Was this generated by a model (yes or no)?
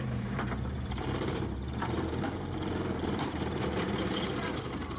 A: yes